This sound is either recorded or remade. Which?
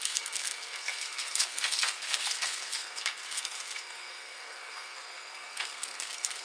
remade